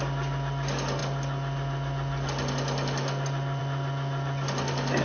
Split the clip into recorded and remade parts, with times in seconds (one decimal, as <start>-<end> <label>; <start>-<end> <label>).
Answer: 0.0-5.0 recorded